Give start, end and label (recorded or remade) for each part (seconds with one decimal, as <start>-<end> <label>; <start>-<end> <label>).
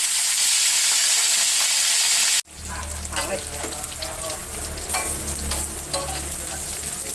0.0-7.1 recorded